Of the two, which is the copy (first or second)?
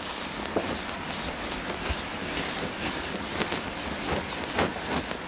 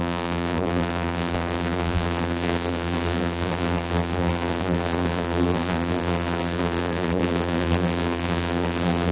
second